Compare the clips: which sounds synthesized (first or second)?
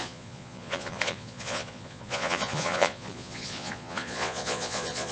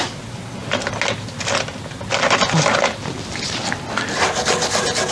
first